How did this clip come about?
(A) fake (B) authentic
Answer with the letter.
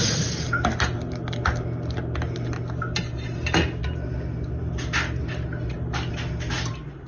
B